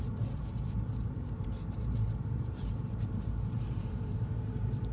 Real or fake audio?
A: fake